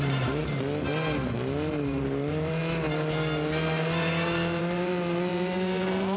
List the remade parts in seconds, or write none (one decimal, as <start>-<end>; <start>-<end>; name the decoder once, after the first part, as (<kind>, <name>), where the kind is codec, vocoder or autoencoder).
0.0-0.4 (vocoder, BigVGAN v2); 1.7-2.6; 4.6-6.2